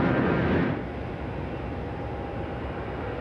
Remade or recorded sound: recorded